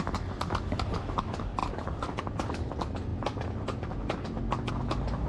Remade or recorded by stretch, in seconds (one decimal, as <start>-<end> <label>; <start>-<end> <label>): 0.0-1.6 recorded; 1.6-2.2 remade; 2.2-5.3 recorded